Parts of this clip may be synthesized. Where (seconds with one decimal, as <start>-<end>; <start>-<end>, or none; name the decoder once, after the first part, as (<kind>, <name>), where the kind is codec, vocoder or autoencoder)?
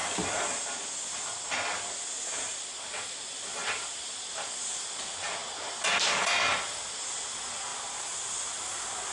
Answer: 3.6-4.7 (vocoder, BigVGAN v2); 7.7-8.7